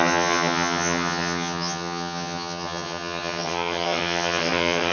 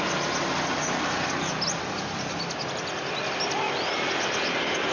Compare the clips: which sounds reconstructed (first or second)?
first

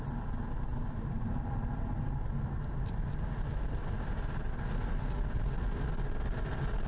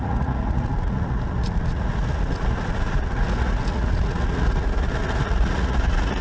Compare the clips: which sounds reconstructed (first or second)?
second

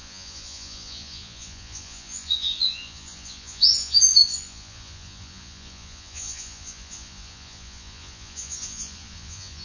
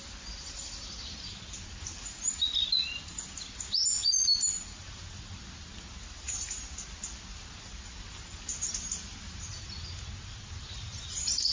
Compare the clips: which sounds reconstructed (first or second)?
first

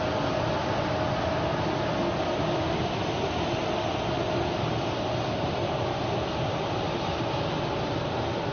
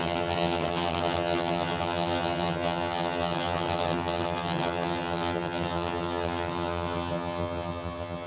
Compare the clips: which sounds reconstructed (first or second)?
second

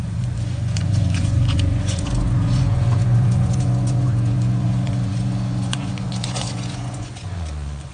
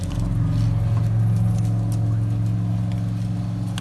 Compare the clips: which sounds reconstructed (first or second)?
first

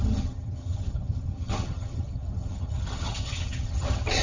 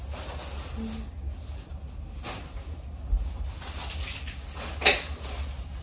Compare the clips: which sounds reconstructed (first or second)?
first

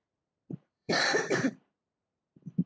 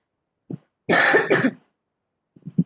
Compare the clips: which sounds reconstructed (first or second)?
first